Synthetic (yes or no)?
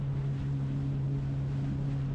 no